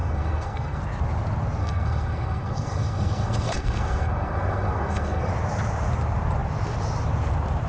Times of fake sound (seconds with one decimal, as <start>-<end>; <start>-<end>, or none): 0.0-0.8; 1.6-5.3